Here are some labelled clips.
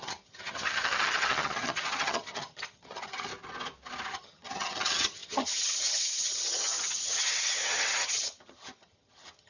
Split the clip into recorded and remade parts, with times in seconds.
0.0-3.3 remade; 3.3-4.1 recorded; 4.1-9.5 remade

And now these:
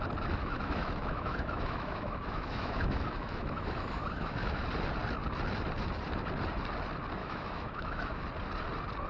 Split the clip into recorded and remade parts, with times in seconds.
0.0-0.4 recorded; 0.4-4.6 remade; 4.6-7.2 recorded; 7.2-8.2 remade; 8.2-9.1 recorded

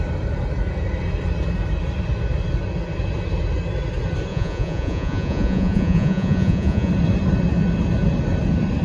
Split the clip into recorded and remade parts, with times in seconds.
0.0-4.3 recorded; 4.3-6.9 remade; 6.9-8.8 recorded

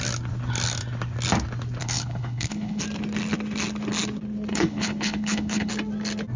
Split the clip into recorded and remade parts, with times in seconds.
0.0-1.8 recorded; 1.8-2.8 remade; 2.8-4.5 recorded; 4.5-5.7 remade; 5.7-6.4 recorded

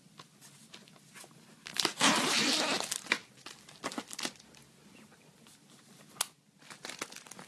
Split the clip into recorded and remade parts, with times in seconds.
0.0-1.7 recorded; 1.7-2.5 remade; 2.5-7.5 recorded

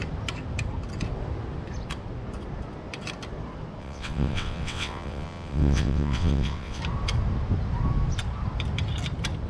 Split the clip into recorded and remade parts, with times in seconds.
0.0-3.8 recorded; 3.8-6.8 remade; 6.8-9.5 recorded

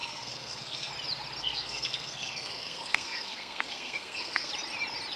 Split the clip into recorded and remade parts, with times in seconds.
0.0-0.9 remade; 0.9-1.4 recorded; 1.4-4.5 remade; 4.5-5.2 recorded

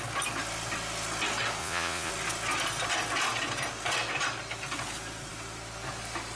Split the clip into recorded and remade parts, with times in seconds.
0.0-1.6 recorded; 1.6-2.1 remade; 2.1-6.4 recorded